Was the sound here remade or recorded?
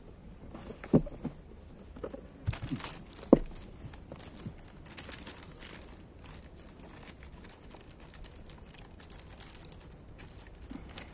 recorded